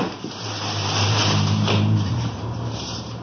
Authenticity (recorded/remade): remade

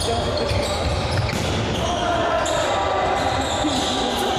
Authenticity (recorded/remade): recorded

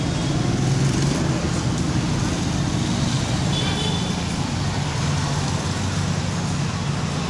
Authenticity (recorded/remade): recorded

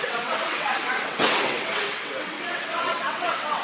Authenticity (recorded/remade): remade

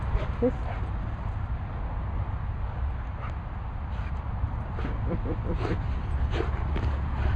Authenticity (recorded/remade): recorded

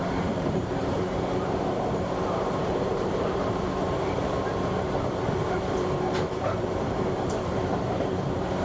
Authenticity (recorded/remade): remade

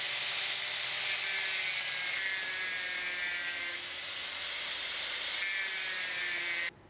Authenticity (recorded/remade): recorded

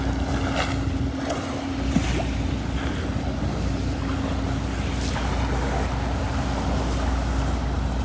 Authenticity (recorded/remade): recorded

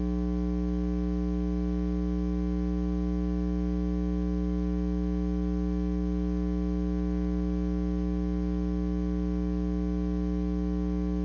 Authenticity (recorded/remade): recorded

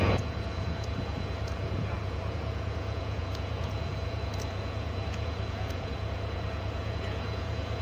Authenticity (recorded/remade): remade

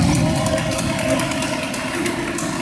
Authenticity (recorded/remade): recorded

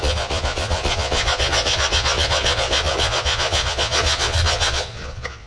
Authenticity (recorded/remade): remade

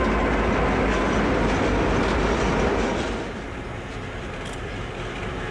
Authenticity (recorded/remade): recorded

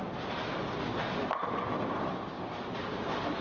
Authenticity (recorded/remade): recorded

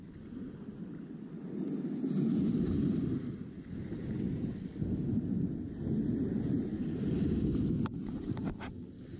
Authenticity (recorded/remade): recorded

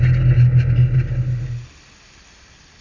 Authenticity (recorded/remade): recorded